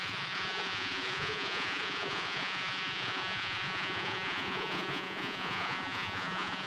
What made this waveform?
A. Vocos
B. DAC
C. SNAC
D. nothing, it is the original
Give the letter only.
A